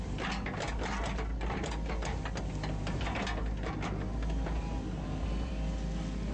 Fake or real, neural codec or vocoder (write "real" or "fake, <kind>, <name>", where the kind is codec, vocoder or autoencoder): real